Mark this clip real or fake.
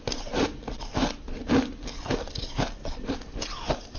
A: real